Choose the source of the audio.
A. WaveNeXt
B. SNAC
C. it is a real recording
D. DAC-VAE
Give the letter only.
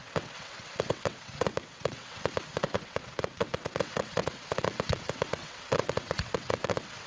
A